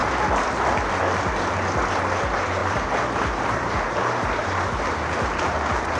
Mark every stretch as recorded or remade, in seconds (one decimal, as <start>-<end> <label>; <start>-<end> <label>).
0.0-2.6 recorded; 2.6-6.0 remade